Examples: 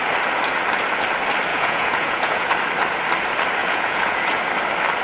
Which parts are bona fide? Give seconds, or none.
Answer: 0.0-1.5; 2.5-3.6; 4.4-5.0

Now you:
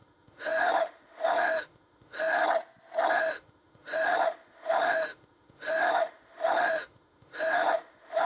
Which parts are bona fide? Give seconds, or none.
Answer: 2.4-3.1